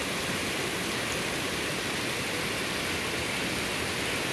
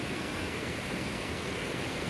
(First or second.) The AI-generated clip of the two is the second